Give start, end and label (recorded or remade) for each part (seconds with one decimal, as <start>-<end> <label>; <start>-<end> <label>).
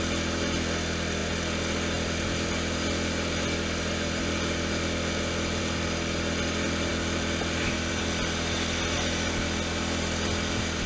0.0-10.9 recorded